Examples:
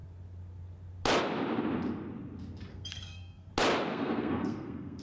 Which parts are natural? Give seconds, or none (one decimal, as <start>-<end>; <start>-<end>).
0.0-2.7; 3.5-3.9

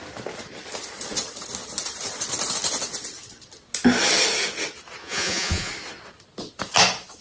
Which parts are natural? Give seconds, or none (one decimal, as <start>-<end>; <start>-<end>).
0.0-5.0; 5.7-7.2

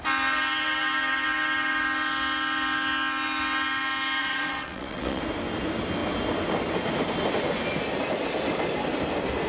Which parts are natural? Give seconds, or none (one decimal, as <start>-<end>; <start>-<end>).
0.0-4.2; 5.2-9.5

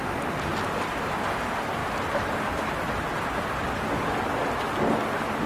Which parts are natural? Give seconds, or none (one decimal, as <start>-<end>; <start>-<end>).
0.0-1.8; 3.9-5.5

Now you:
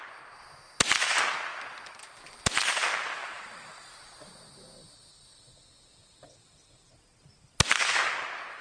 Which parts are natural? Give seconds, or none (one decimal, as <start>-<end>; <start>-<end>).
0.0-3.2; 4.1-6.0; 7.8-8.6

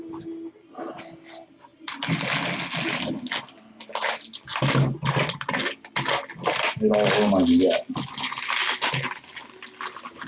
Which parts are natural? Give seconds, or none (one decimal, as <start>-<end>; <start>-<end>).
0.0-10.3

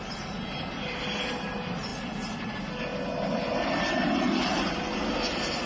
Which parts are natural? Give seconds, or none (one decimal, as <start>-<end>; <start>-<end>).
0.0-5.7

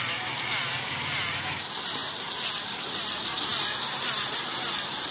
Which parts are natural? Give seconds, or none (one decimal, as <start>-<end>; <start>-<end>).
0.0-5.1